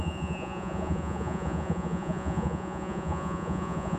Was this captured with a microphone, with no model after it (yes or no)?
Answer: no